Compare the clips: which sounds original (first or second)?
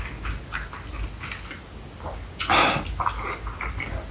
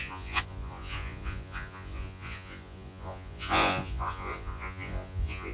first